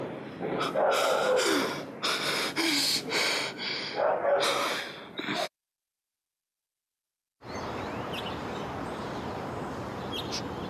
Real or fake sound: real